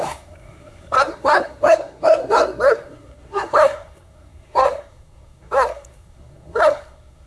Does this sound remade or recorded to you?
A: remade